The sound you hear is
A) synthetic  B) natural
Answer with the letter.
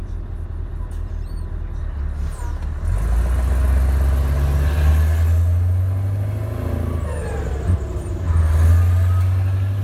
B